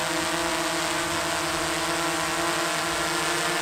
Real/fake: real